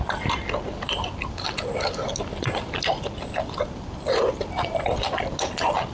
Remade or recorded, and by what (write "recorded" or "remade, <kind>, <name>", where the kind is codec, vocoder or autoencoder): recorded